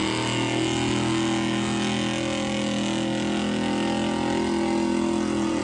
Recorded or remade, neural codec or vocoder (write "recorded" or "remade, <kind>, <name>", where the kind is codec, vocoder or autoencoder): recorded